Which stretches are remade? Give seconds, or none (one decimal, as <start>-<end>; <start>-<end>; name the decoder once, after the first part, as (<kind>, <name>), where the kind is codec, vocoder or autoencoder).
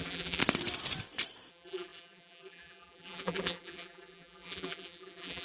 0.0-0.4 (vocoder, BigVGAN v2); 1.5-5.4